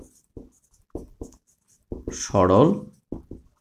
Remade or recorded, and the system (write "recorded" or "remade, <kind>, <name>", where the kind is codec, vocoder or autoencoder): recorded